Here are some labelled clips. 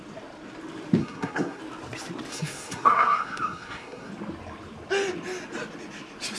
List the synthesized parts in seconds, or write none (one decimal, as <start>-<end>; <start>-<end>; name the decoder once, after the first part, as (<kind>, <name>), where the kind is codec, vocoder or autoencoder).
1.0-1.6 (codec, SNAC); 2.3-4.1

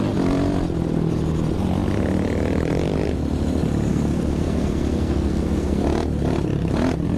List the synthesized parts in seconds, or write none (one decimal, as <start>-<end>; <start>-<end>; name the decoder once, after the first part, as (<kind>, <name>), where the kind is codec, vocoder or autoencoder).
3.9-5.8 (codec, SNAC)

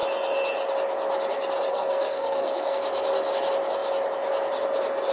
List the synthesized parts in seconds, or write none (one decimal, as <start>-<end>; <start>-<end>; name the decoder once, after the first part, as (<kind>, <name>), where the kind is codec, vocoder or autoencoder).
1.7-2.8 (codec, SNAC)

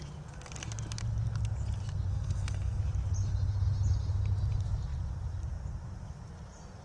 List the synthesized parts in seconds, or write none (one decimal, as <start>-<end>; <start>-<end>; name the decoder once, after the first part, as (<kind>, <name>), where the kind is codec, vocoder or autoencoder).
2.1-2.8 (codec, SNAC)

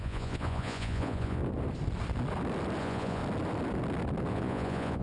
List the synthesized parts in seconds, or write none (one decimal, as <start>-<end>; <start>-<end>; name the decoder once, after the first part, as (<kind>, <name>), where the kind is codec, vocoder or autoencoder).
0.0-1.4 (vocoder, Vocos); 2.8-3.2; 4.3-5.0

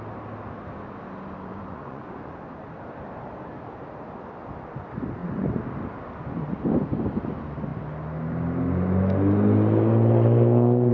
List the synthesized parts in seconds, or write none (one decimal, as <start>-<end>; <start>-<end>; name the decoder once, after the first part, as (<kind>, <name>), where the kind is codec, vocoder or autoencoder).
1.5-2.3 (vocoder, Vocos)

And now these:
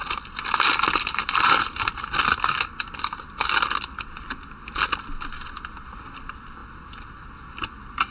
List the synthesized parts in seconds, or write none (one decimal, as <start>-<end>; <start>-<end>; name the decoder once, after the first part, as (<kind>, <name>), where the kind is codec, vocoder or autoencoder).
none